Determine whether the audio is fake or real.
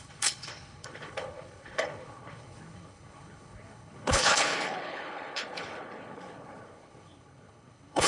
fake